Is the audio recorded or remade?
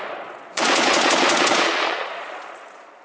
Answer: remade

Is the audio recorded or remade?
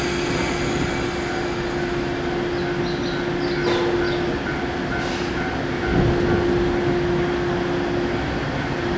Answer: recorded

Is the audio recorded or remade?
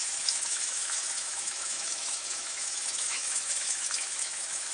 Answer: remade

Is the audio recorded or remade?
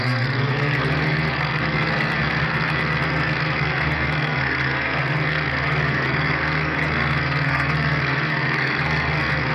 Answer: remade